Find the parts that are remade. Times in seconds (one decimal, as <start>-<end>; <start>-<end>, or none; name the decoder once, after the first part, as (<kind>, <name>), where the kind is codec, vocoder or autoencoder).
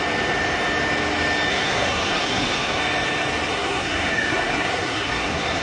1.5-2.8 (codec, SNAC); 3.5-5.6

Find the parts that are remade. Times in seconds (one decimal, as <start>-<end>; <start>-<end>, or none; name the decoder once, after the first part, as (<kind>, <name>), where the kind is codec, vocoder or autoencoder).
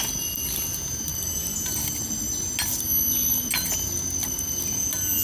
none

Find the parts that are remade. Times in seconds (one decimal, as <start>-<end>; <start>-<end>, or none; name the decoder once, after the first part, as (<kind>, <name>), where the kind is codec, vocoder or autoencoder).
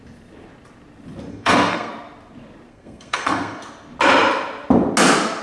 1.3-1.9 (codec, SNAC); 2.7-3.6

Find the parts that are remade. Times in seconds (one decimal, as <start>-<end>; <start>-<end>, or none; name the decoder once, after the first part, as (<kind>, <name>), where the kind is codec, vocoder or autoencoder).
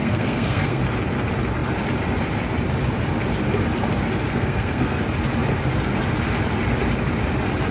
0.0-0.8 (codec, SNAC); 4.3-5.0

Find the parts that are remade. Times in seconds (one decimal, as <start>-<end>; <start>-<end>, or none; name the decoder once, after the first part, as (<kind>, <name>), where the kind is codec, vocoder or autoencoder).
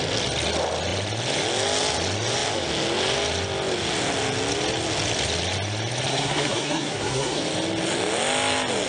6.1-7.4 (codec, SNAC)